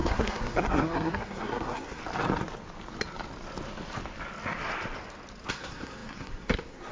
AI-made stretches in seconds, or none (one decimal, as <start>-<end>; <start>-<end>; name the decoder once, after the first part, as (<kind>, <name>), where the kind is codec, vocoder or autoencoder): 0.0-2.0 (codec, SNAC); 5.5-6.9